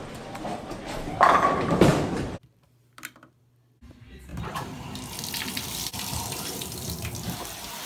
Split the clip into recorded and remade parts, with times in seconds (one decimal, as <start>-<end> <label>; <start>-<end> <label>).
0.0-1.9 recorded; 1.9-3.4 remade; 3.4-4.3 recorded; 4.3-4.9 remade; 4.9-5.9 recorded; 5.9-6.8 remade; 6.8-7.9 recorded